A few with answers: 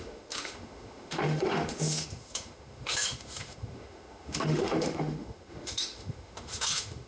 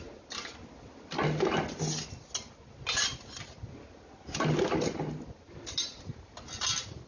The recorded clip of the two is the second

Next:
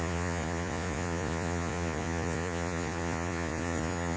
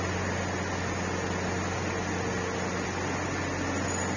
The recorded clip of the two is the second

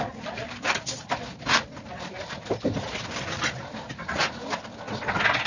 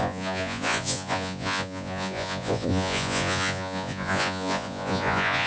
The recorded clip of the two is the first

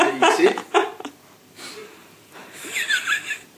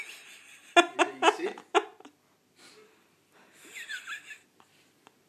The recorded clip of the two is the second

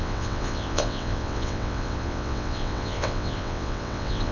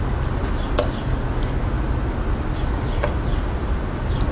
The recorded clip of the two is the second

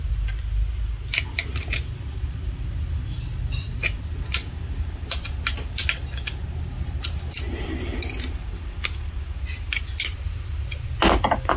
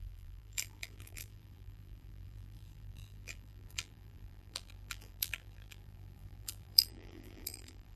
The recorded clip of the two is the first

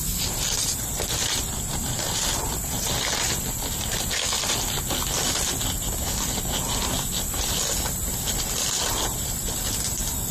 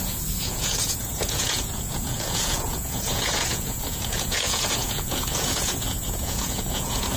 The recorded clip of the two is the first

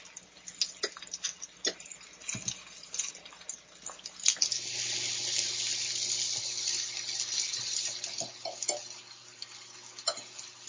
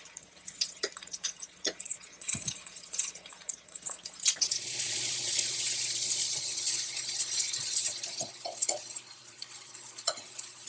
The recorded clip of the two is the first